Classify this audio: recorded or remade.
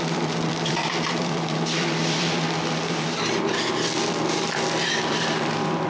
remade